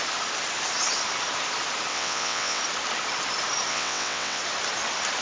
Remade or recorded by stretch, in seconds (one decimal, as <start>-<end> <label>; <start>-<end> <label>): 0.0-1.9 recorded; 1.9-2.6 remade; 2.6-3.7 recorded; 3.7-4.4 remade; 4.4-5.2 recorded

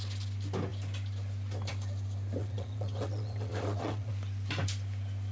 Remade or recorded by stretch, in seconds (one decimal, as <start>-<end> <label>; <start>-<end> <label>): 0.0-2.4 recorded; 2.4-4.1 remade; 4.1-5.3 recorded

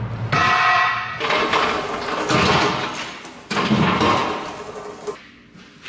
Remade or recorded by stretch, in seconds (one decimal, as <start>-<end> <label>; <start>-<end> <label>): 0.0-5.9 recorded